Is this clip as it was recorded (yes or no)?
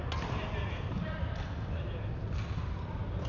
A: yes